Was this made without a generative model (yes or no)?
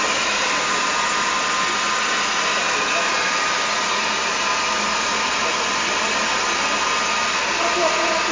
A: yes